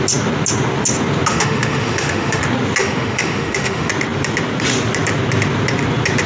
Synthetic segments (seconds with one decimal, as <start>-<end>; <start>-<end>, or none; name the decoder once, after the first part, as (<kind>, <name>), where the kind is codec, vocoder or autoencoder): 1.3-2.4 (autoencoder, DAC-VAE); 2.8-3.9